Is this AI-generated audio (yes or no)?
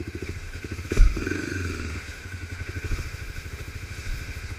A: yes